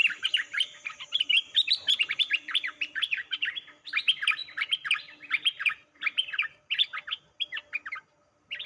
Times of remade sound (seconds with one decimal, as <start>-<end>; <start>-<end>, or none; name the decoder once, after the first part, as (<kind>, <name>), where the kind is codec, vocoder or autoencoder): 0.0-3.7 (vocoder, BigVGAN v2); 4.4-6.6